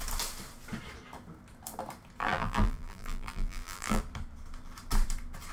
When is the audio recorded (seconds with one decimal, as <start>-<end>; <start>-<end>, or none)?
0.0-2.2; 4.0-5.5